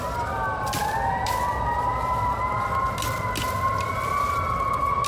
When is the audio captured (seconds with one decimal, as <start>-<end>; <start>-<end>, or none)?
0.0-5.1